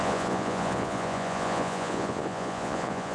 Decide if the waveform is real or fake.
fake